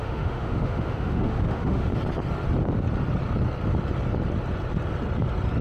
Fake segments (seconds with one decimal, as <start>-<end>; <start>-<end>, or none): 0.0-1.9